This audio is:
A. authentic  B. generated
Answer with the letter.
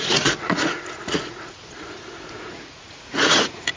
B